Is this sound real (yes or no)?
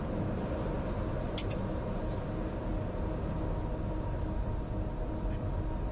yes